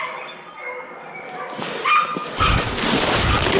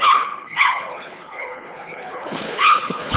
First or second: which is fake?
second